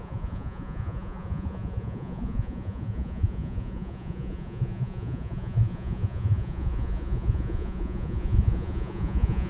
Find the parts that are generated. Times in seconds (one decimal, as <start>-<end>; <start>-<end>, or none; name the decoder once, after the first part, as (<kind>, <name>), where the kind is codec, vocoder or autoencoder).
0.0-9.5 (vocoder, Vocos)